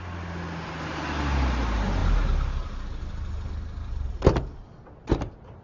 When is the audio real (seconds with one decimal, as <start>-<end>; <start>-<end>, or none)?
0.0-5.6